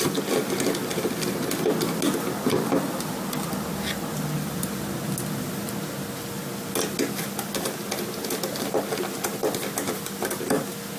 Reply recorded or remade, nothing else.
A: recorded